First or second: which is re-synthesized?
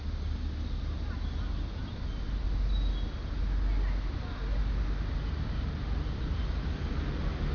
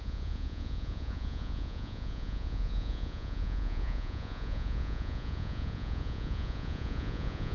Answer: second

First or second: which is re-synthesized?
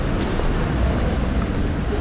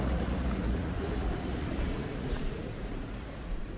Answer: second